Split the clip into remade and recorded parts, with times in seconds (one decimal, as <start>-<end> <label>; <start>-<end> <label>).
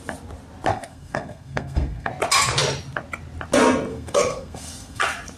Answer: 0.0-0.7 recorded; 0.7-2.1 remade; 2.1-3.9 recorded; 3.9-5.0 remade; 5.0-5.4 recorded